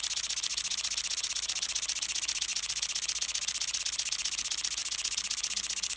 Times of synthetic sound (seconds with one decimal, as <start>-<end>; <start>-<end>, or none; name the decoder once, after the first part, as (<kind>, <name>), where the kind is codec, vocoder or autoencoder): none